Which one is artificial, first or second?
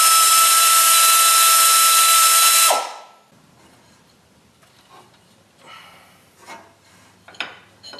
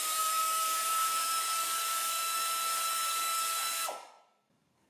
second